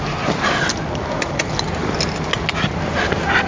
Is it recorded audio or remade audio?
recorded